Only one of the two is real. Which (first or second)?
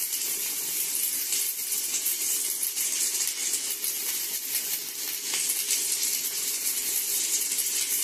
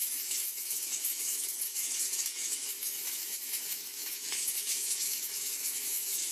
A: first